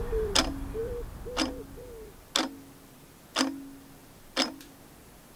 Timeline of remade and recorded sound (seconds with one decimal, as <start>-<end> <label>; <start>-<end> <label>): 0.0-4.0 recorded; 4.0-4.7 remade; 4.7-5.4 recorded